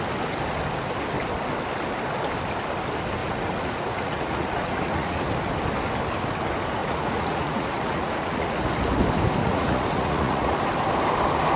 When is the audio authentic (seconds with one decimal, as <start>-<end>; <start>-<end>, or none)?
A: 0.0-3.2; 5.3-6.8; 8.7-9.4; 10.6-11.6